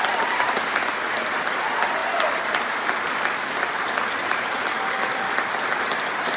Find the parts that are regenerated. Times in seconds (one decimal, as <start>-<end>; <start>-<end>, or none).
4.7-5.3